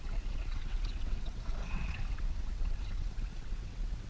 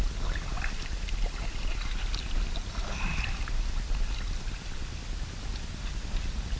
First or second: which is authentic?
second